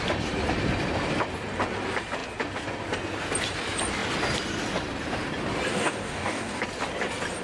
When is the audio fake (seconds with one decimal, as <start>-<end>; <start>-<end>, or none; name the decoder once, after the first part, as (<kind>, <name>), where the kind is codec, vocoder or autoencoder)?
5.7-6.6 (codec, DAC)

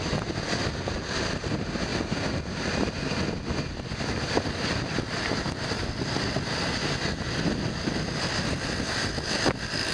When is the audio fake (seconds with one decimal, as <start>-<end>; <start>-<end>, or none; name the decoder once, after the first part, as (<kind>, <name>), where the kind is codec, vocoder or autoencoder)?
none